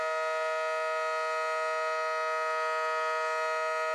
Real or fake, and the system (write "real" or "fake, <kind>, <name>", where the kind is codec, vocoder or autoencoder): real